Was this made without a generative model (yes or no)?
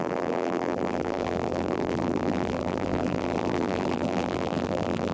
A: no